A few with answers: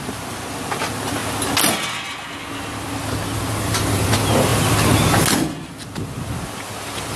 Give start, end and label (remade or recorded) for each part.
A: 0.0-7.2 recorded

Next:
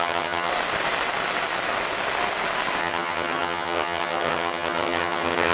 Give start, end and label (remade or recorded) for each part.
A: 0.0-0.5 remade; 0.5-2.8 recorded; 2.8-5.5 remade

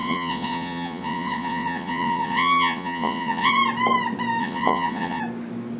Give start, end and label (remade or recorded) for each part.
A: 0.0-3.5 remade; 3.5-4.4 recorded; 4.4-5.2 remade; 5.2-5.8 recorded